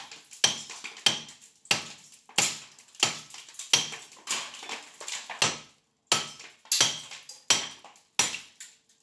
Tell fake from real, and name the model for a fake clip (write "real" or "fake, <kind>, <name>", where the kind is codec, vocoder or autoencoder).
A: real